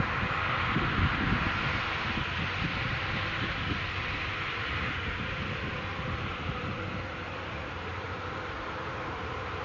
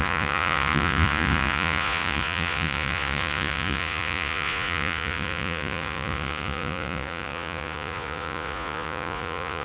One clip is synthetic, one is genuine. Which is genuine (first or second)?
first